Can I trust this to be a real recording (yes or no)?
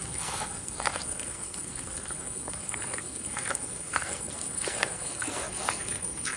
no